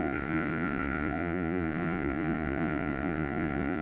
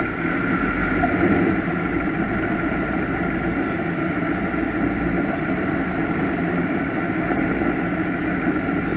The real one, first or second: second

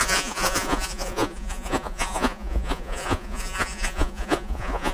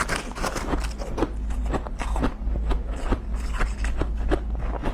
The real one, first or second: second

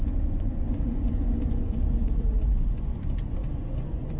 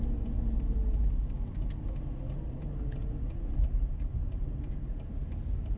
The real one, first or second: second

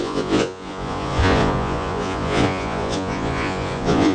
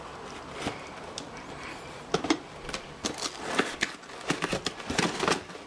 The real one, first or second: second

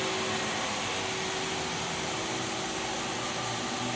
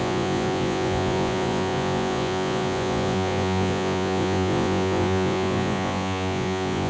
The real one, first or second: first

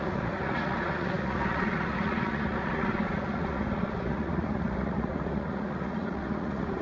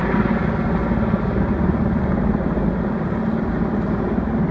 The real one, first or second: second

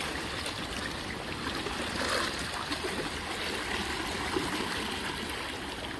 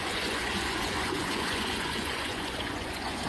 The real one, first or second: first